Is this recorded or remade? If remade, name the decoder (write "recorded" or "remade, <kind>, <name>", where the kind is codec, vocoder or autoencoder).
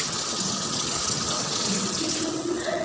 remade, vocoder, WaveNeXt